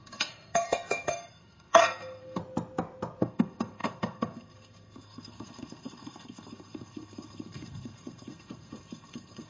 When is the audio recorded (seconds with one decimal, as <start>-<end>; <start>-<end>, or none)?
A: 2.4-3.2